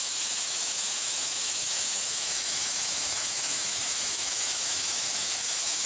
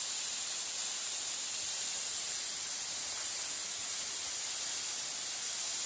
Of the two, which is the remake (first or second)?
first